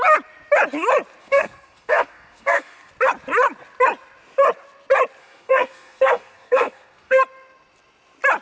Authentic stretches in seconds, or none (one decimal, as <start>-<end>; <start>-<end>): 0.0-1.2; 2.9-5.2; 7.2-8.4